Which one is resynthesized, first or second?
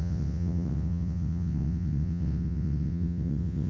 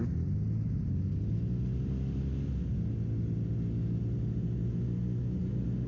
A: first